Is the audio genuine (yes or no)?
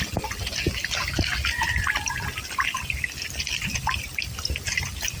yes